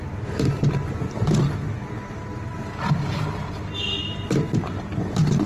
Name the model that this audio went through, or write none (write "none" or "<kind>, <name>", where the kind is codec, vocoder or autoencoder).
none